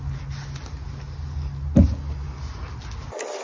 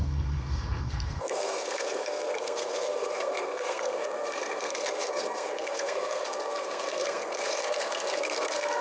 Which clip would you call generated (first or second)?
second